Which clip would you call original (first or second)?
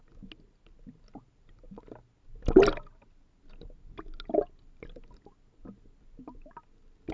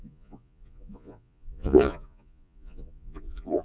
first